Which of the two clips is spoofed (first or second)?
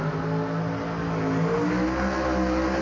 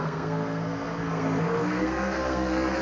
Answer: second